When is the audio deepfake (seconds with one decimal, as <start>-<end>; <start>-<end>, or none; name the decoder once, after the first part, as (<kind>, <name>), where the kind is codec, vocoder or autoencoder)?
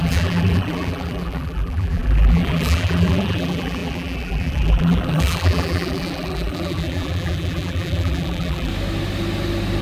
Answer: 0.0-8.7 (vocoder, BigVGAN v2)